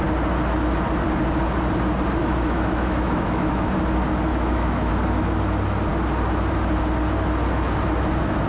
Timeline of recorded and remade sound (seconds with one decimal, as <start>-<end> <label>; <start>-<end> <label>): 0.0-2.2 recorded; 2.2-3.7 remade; 3.7-4.3 recorded; 4.3-4.9 remade; 4.9-8.5 recorded